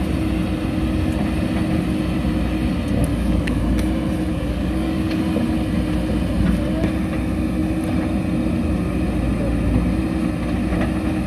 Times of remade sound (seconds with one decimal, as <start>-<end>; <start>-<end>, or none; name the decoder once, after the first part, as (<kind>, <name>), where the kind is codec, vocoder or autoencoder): 3.1-3.6 (codec, DAC); 4.3-5.2